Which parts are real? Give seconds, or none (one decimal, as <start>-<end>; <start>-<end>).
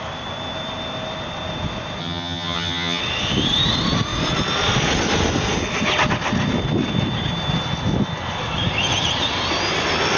0.0-2.0; 3.0-10.2